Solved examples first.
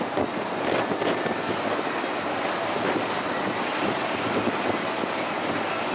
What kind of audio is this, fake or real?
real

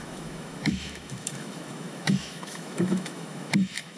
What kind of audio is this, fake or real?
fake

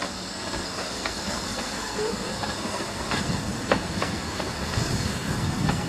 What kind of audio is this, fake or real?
fake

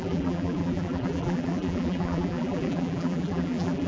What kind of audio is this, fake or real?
fake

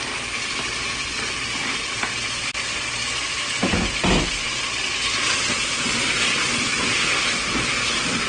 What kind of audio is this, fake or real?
real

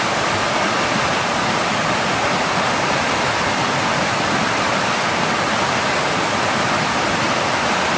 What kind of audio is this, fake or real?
real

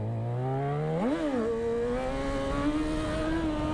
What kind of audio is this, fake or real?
real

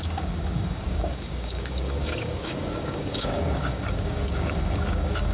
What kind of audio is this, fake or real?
fake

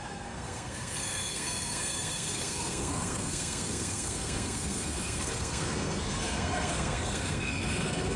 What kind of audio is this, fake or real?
fake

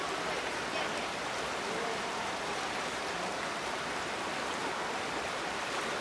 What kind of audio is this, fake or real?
fake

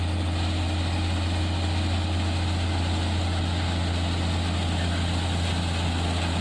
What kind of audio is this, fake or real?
real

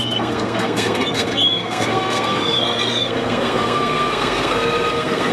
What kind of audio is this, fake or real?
fake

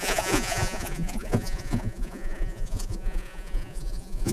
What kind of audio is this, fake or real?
fake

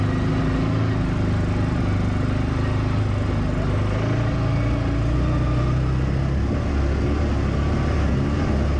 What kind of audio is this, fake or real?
real